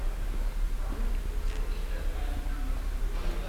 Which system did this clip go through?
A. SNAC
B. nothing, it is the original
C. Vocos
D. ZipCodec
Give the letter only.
B